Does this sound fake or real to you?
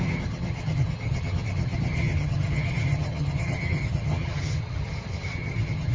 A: fake